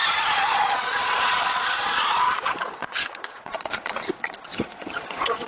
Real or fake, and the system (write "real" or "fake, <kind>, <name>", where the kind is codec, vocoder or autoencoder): fake, vocoder, Vocos